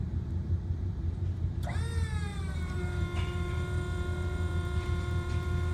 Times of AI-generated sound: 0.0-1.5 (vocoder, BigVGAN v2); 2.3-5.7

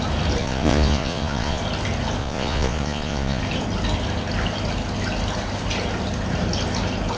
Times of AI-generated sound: 0.4-1.6 (vocoder, Vocos); 2.2-3.4

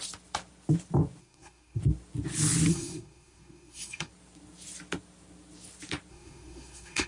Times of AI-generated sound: 1.2-1.8 (codec, SNAC); 2.7-4.1; 6.1-7.1

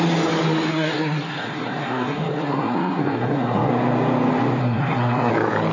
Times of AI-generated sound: 0.7-3.7 (codec, SNAC); 4.6-5.3

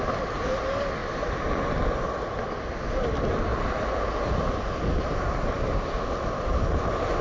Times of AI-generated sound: none

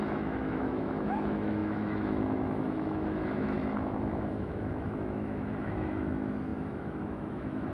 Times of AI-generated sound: 0.0-7.7 (autoencoder, DAC-VAE)

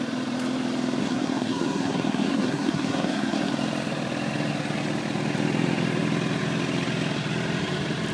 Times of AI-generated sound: 1.0-3.5 (codec, SNAC)